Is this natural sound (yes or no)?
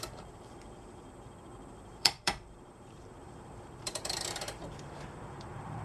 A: no